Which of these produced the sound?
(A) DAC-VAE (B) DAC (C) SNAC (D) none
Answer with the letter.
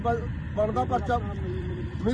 D